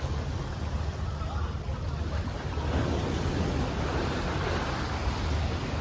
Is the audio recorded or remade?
recorded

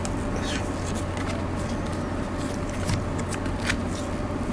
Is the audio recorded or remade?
recorded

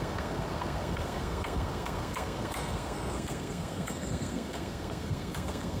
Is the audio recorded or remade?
remade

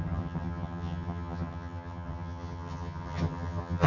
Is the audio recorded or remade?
remade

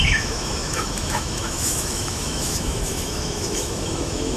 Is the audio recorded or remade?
remade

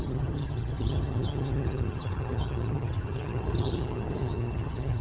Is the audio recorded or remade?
remade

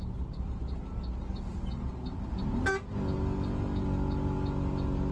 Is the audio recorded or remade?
recorded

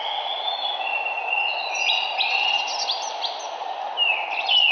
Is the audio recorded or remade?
recorded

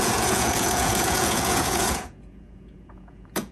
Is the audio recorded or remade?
remade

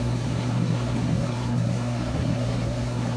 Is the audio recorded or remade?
remade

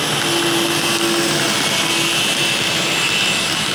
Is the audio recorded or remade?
recorded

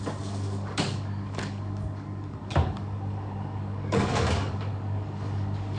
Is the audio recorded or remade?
remade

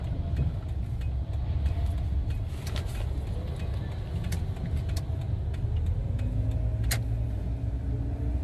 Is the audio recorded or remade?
recorded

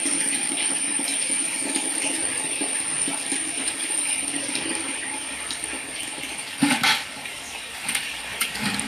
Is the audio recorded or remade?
remade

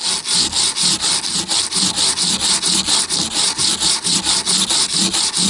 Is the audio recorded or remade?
recorded